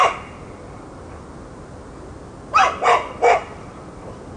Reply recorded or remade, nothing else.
recorded